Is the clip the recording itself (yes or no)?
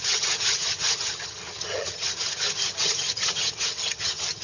no